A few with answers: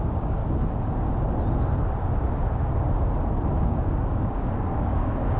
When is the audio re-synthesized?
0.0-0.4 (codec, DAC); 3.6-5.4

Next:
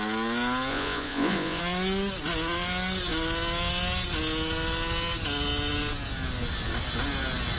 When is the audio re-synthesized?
0.7-1.6 (vocoder, Vocos)

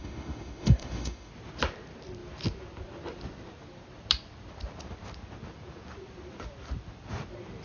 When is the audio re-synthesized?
0.0-1.3 (autoencoder, DAC-VAE)

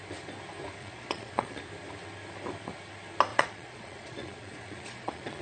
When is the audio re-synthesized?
0.8-1.6 (vocoder, Vocos); 3.3-5.4

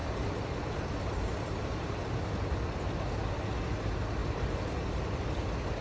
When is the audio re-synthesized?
0.0-2.1 (vocoder, BigVGAN v2)